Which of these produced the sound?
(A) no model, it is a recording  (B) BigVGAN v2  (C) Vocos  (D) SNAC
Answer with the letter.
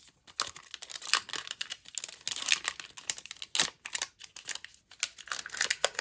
A